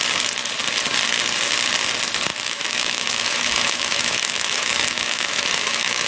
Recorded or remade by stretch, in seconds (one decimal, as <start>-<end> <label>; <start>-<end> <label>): 0.0-2.3 recorded; 2.3-6.1 remade